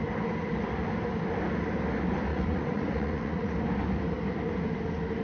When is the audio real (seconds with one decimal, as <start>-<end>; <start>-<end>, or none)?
0.0-2.3; 3.5-5.2